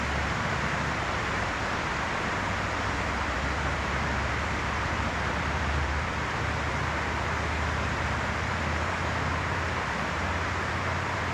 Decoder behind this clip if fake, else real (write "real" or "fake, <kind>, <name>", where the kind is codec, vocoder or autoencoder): fake, vocoder, BigVGAN v2